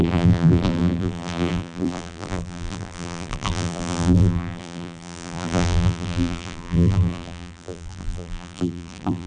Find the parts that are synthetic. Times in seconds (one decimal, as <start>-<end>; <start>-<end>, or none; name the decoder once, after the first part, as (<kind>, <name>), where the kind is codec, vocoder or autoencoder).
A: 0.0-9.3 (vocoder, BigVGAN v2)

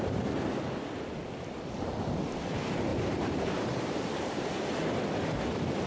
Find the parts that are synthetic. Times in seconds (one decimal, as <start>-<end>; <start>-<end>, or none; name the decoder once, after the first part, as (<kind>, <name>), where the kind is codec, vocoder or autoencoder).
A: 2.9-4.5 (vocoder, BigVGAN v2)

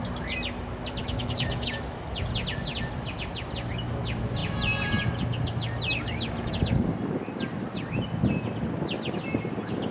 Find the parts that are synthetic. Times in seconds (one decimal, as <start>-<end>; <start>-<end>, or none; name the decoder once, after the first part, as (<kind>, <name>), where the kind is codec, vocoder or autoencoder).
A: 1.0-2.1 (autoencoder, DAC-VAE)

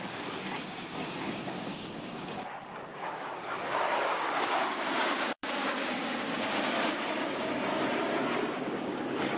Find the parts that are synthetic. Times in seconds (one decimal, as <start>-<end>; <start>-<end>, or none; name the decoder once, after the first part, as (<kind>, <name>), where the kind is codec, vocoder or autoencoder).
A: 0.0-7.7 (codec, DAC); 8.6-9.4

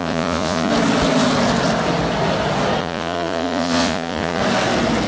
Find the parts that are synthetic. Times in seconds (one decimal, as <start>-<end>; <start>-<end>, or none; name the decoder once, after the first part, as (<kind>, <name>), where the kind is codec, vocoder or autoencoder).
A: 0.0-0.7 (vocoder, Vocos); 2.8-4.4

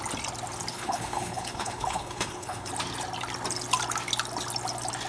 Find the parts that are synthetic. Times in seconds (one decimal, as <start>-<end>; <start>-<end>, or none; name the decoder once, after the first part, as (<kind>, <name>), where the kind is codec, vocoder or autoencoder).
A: 0.7-2.7 (codec, HILCodec)

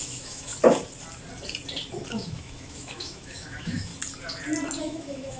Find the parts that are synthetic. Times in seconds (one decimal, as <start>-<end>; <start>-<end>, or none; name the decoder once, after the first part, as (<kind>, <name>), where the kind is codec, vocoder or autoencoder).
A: 0.0-0.5 (autoencoder, DAC-VAE); 2.1-3.9; 4.8-5.4